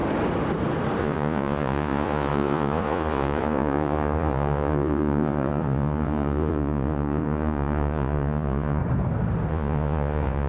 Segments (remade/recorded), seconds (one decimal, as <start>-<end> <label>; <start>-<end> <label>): 0.0-1.0 recorded; 1.0-8.8 remade; 8.8-9.5 recorded; 9.5-10.5 remade